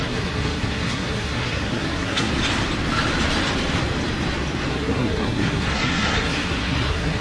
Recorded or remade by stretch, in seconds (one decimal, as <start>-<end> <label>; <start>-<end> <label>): 0.0-2.3 remade; 2.3-4.7 recorded; 4.7-7.2 remade